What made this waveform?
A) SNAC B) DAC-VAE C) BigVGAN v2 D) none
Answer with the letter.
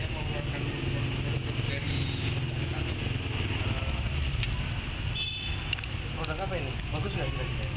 D